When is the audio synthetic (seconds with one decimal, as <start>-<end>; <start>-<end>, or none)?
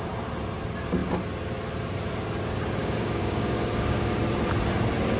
2.8-4.2